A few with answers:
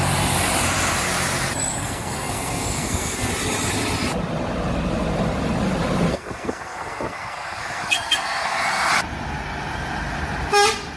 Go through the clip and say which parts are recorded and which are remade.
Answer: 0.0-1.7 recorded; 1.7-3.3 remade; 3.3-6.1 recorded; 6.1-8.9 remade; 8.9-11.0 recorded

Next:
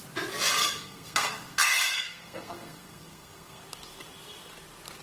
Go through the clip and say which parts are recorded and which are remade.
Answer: 0.0-0.6 recorded; 0.6-3.6 remade; 3.6-5.0 recorded

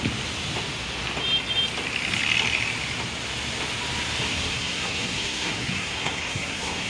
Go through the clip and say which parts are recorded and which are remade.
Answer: 0.0-4.3 recorded; 4.3-6.9 remade

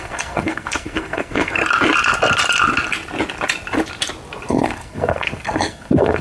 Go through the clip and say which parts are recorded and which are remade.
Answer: 0.0-1.6 remade; 1.6-4.5 recorded; 4.5-6.2 remade

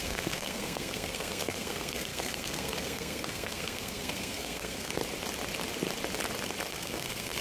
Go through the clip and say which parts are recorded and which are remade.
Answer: 0.0-5.0 remade; 5.0-6.7 recorded; 6.7-7.4 remade

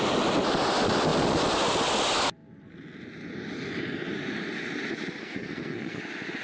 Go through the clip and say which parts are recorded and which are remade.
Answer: 0.0-5.2 recorded; 5.2-6.0 remade; 6.0-6.4 recorded

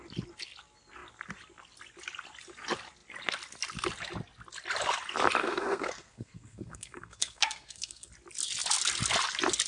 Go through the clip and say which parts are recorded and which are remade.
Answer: 0.0-5.4 recorded; 5.4-8.1 remade; 8.1-9.7 recorded